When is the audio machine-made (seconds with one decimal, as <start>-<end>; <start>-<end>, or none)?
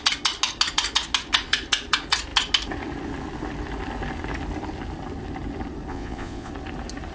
5.9-6.5